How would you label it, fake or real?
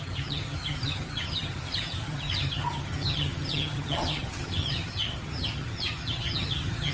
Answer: fake